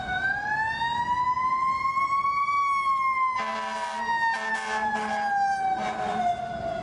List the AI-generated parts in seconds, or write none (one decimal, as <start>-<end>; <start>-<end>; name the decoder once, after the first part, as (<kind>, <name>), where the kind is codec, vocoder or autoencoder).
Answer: none